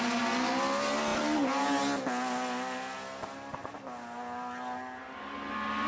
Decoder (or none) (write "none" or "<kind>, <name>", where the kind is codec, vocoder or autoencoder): none